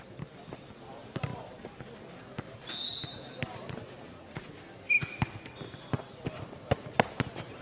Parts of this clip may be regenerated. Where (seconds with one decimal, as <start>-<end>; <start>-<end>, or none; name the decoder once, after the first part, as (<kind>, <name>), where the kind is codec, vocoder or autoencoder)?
none